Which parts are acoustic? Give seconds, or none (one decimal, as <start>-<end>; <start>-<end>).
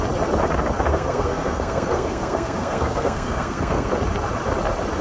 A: 0.0-0.9; 3.9-5.0